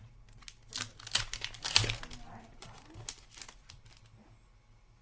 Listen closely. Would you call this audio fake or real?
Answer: real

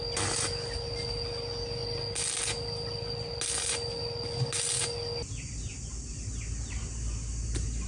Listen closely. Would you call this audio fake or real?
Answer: real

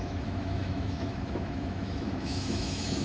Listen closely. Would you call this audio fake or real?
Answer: fake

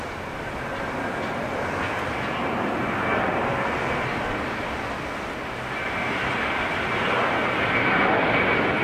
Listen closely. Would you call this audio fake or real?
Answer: real